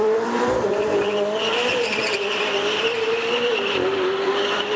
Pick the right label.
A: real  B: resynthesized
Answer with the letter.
B